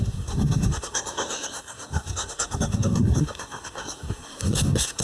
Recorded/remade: remade